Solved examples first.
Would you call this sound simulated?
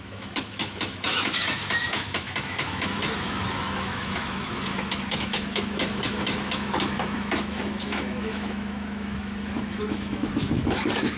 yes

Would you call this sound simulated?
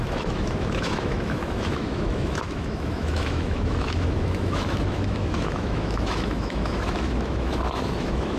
yes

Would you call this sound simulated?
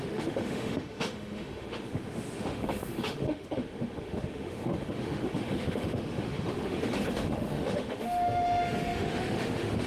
yes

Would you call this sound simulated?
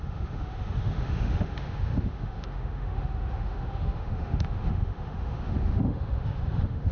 yes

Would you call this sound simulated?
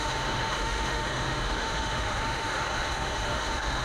yes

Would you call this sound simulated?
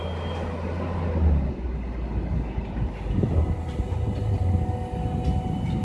no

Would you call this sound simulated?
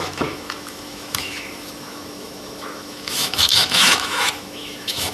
yes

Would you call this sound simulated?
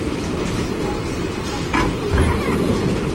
no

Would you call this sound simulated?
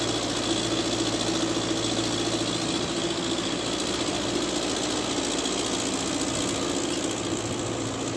no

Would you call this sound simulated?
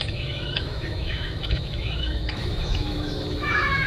yes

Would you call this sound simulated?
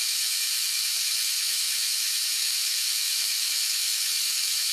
yes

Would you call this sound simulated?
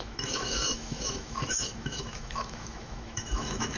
yes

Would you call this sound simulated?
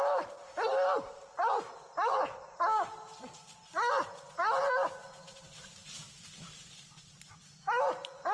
no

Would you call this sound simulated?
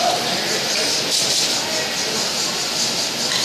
no